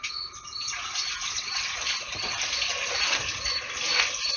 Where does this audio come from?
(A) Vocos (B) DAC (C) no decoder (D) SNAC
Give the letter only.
C